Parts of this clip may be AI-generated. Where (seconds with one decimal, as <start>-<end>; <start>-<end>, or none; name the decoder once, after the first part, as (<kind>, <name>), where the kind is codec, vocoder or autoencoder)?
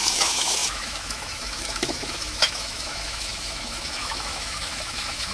0.0-5.3 (autoencoder, DAC-VAE)